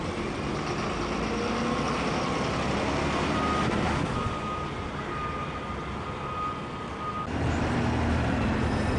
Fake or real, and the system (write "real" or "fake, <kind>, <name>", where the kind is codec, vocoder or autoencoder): real